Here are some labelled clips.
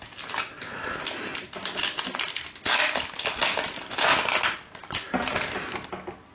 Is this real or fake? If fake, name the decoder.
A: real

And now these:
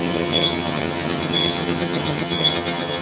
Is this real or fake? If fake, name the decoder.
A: fake, vocoder, HiFi-GAN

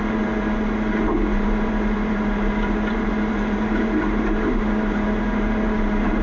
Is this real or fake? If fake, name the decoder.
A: fake, vocoder, BigVGAN v2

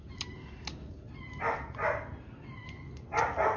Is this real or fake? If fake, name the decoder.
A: real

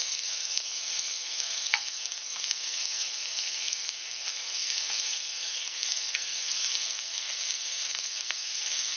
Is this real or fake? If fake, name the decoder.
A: fake, codec, SNAC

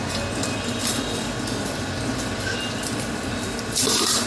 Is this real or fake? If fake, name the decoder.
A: real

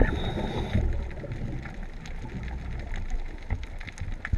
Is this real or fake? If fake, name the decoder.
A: real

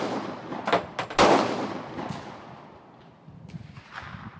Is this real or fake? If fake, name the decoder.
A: real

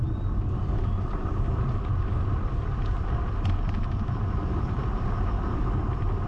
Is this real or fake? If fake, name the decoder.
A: real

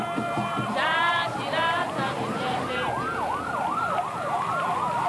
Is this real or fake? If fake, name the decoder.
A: real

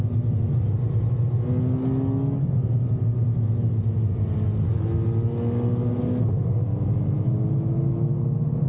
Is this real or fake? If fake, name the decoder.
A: real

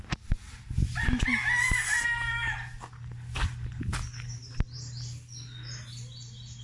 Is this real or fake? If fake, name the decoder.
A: real